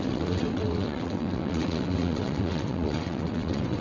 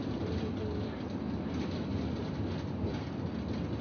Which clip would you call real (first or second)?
second